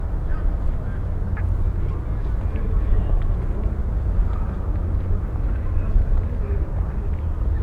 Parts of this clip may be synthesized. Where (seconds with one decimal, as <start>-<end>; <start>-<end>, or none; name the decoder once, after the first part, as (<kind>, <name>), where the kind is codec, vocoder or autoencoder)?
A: none